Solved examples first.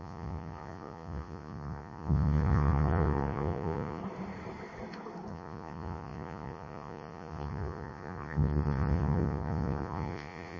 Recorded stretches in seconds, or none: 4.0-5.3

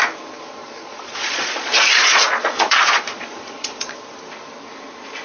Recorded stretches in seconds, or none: 0.0-0.6; 3.7-5.2

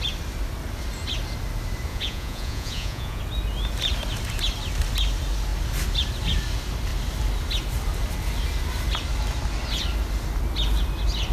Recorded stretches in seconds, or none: 0.0-1.9; 3.2-11.3

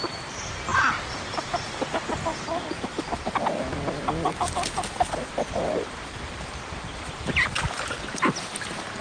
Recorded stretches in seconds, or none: 0.0-9.0